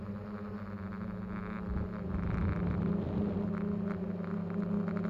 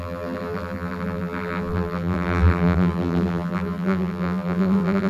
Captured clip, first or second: first